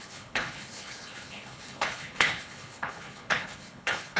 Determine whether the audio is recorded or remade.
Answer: remade